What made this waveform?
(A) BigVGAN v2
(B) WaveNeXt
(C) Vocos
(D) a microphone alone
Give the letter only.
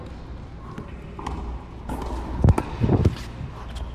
D